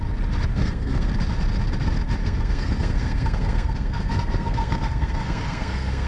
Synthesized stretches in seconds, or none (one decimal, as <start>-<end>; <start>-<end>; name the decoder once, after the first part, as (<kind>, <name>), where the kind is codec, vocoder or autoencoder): 0.5-1.1 (codec, SNAC); 2.2-6.1